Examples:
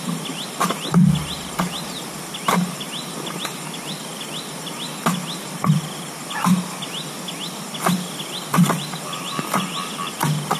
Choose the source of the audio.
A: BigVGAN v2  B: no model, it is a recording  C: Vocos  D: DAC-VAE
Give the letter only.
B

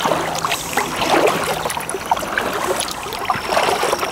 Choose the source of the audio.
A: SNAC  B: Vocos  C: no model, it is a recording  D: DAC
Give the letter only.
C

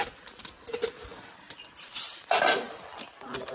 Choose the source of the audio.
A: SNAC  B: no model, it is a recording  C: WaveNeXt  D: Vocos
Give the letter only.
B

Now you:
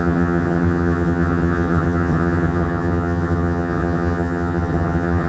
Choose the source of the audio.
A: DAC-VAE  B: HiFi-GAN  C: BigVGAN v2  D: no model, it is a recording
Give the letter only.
B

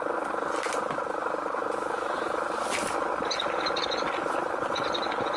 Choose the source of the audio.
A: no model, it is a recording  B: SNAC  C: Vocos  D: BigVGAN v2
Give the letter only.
D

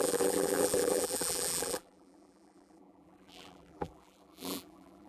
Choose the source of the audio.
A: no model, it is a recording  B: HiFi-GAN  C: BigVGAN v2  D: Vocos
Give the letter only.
C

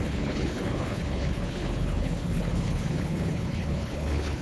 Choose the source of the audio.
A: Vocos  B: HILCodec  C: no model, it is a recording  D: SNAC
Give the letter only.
B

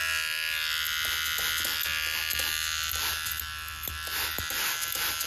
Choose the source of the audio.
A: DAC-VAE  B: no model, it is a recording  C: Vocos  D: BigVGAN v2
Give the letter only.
B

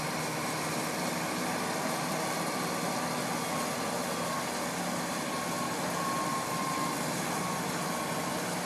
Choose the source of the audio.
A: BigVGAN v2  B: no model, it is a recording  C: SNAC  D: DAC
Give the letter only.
B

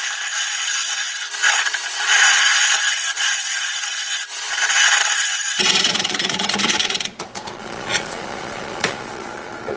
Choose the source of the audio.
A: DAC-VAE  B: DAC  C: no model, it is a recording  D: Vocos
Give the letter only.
D